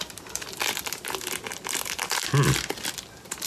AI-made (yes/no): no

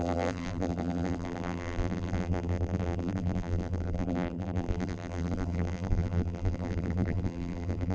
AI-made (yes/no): yes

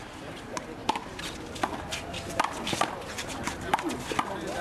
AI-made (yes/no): no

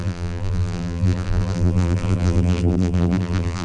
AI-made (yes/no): yes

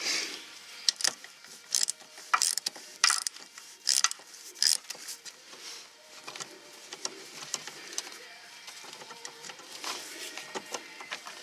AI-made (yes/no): yes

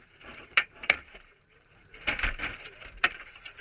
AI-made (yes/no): yes